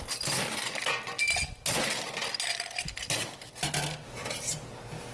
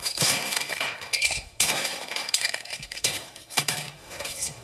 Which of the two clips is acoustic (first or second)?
first